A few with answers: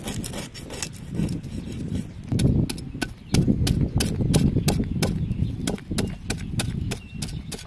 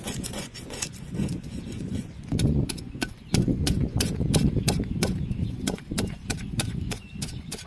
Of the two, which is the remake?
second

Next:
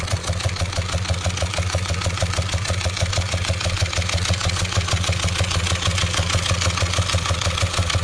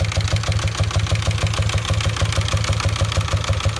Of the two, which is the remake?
first